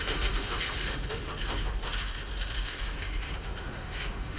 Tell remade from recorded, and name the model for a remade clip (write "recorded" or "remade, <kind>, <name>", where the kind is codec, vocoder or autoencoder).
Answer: remade, autoencoder, DAC-VAE